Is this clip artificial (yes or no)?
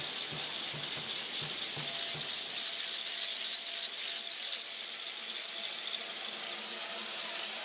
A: no